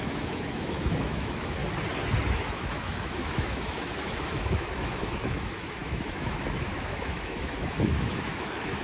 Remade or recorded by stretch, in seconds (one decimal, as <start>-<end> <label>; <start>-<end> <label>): 0.0-1.6 remade; 1.6-2.3 recorded; 2.3-8.8 remade